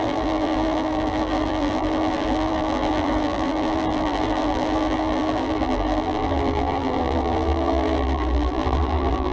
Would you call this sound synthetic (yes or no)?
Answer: yes